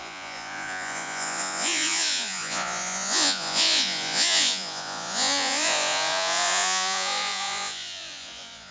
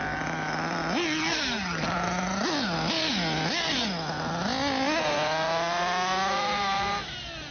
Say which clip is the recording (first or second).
second